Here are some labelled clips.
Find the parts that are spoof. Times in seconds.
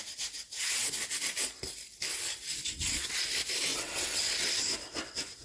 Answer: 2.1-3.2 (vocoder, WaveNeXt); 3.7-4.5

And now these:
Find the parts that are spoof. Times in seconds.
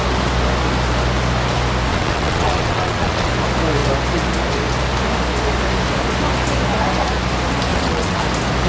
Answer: 1.9-3.3 (vocoder, WaveNeXt); 7.7-8.2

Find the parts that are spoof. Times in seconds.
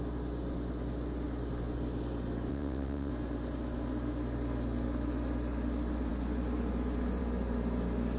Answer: 2.5-3.1 (vocoder, WaveNeXt)